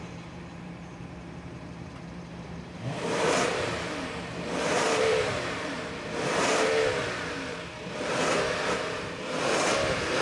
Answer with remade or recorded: remade